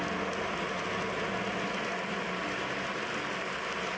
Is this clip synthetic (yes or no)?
no